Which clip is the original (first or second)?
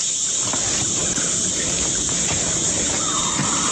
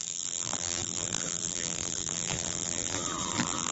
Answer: first